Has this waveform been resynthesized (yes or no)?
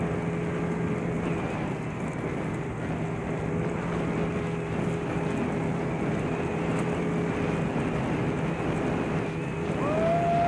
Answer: no